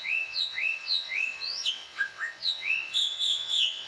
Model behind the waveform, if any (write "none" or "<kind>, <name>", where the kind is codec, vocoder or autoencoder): vocoder, WaveNeXt